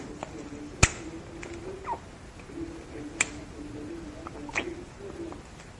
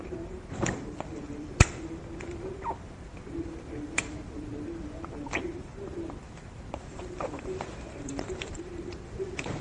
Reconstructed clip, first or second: second